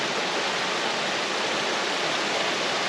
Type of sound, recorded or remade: recorded